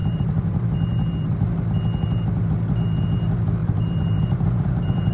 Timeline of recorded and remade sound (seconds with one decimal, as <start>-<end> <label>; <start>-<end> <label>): 0.0-1.4 remade; 1.4-3.6 recorded; 3.6-5.1 remade